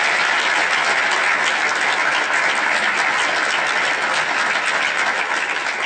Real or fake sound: real